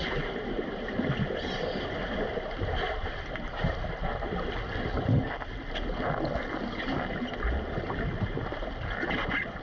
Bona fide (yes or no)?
yes